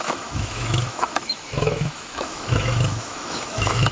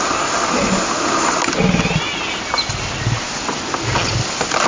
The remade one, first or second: first